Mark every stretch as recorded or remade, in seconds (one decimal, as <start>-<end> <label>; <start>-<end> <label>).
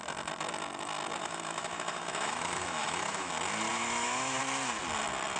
0.0-1.2 recorded; 1.2-3.3 remade; 3.3-3.7 recorded; 3.7-4.4 remade; 4.4-5.4 recorded